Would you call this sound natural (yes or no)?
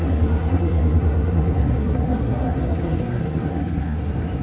no